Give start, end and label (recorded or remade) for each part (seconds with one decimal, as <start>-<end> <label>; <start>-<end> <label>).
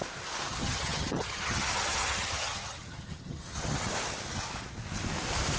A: 0.0-0.5 recorded; 0.5-3.9 remade; 3.9-5.6 recorded